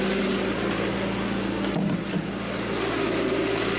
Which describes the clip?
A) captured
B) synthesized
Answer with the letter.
A